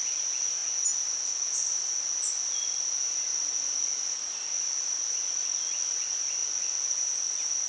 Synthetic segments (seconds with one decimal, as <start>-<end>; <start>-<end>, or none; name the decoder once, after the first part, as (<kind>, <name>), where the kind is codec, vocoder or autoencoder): none